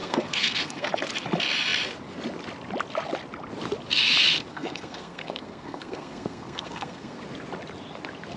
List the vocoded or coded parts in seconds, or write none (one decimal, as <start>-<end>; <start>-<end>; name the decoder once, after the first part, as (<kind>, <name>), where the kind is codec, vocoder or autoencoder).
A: 0.0-0.9 (codec, SNAC); 4.5-7.2

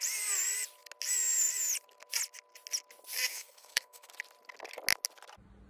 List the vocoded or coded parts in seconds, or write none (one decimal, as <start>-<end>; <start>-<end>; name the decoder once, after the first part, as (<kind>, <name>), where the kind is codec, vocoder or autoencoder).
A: 3.3-4.1 (codec, SNAC)

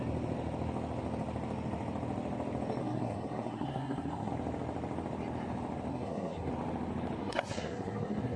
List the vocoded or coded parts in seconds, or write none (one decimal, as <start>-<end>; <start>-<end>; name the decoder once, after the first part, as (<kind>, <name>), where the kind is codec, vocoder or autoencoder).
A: 2.8-4.3 (codec, SNAC); 5.9-6.5; 7.2-8.4